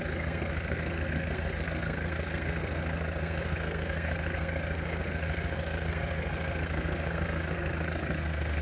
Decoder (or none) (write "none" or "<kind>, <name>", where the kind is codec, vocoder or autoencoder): codec, SNAC